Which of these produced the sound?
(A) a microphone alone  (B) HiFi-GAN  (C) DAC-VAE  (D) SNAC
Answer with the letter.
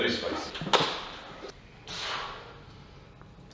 A